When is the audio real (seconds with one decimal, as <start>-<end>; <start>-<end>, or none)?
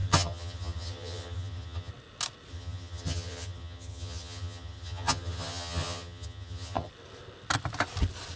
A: 1.9-2.5; 6.9-8.4